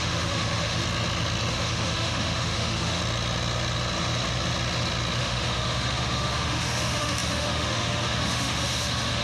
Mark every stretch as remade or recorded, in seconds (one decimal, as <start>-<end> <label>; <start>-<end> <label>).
0.0-0.8 remade; 0.8-1.5 recorded; 1.5-3.0 remade; 3.0-5.2 recorded; 5.2-9.2 remade